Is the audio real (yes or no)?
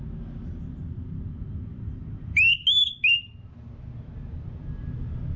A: yes